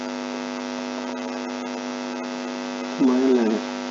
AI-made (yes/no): no